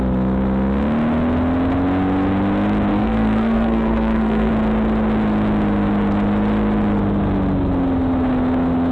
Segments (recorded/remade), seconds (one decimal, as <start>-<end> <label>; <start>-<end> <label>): 0.0-2.9 recorded; 2.9-4.5 remade; 4.5-8.9 recorded